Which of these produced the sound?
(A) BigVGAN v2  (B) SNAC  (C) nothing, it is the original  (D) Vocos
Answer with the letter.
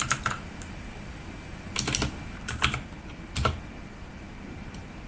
C